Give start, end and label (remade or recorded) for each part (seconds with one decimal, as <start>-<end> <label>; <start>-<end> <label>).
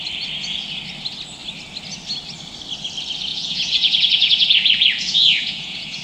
0.0-3.3 recorded; 3.3-6.0 remade